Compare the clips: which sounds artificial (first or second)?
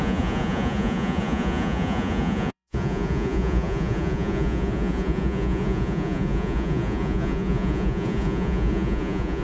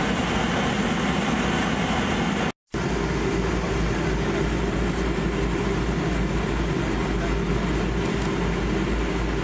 first